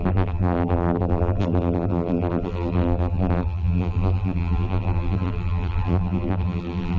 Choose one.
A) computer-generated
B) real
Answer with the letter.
A